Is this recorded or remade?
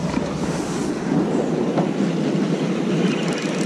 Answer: recorded